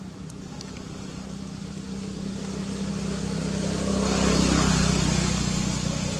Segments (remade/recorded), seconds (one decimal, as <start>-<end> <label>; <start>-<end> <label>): 0.0-1.6 recorded; 1.6-2.9 remade; 2.9-6.2 recorded

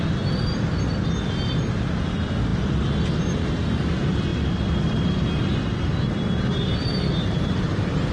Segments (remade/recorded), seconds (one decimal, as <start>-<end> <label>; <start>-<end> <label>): 0.0-4.3 recorded; 4.3-8.1 remade

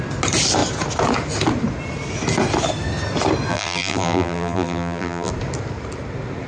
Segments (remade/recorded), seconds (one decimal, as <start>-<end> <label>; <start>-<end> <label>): 0.0-3.5 recorded; 3.5-5.3 remade; 5.3-6.5 recorded

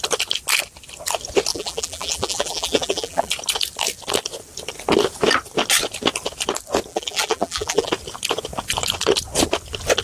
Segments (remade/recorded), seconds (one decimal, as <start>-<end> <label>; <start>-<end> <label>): 0.0-1.5 recorded; 1.5-3.3 remade; 3.3-6.9 recorded; 6.9-7.9 remade; 7.9-10.0 recorded